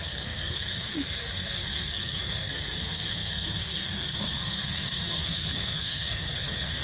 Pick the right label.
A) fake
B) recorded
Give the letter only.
A